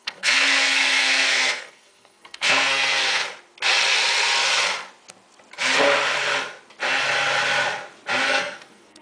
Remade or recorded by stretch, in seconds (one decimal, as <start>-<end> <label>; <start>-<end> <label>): 0.0-3.2 remade; 3.2-8.2 recorded; 8.2-9.0 remade